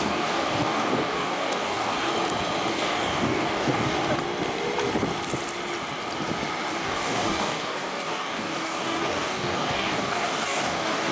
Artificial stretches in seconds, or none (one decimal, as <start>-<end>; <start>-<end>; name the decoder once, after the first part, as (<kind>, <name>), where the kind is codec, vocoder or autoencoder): 0.0-2.1 (codec, DAC); 2.7-4.0; 6.7-11.1